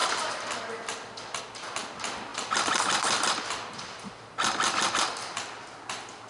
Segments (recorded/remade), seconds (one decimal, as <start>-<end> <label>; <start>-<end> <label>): 0.0-1.4 remade; 1.4-2.3 recorded; 2.3-3.5 remade; 3.5-6.3 recorded